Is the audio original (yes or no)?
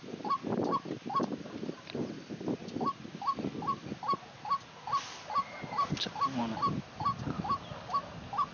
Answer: yes